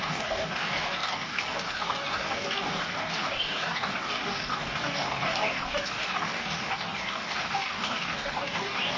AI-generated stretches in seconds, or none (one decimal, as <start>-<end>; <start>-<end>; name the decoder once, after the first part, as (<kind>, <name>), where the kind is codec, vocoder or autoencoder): 0.0-9.0 (codec, DAC)